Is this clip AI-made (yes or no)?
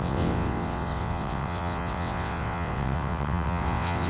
yes